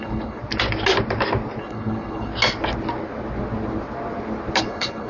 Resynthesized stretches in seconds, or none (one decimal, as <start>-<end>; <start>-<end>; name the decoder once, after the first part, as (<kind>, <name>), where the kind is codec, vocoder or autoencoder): 0.0-0.4 (codec, HILCodec); 1.6-2.3; 4.6-5.1